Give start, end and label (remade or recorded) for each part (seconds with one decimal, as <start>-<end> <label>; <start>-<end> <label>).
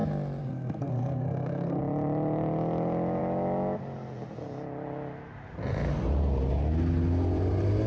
0.0-0.4 recorded; 0.4-1.8 remade; 1.8-7.9 recorded